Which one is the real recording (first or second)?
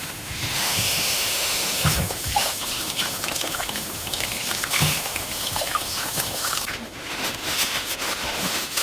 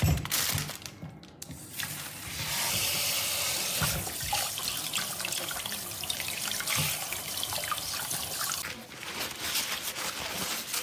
second